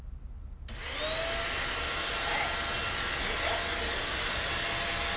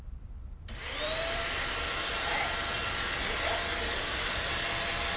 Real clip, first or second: first